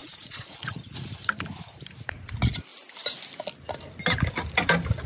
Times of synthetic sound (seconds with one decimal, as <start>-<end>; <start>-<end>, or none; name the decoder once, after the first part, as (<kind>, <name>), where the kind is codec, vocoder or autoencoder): 0.0-0.8 (vocoder, Vocos)